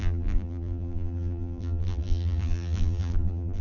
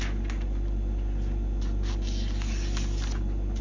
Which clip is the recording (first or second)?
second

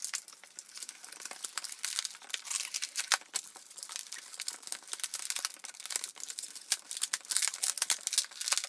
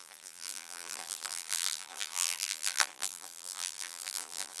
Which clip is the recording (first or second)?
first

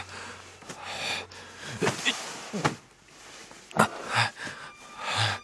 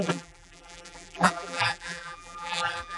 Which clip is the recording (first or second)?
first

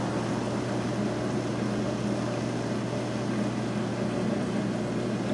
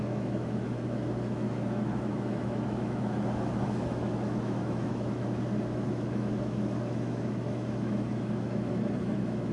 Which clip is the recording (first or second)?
first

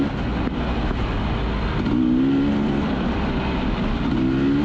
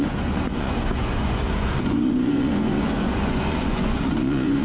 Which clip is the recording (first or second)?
first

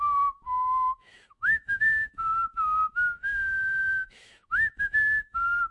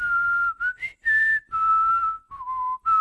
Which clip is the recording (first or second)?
second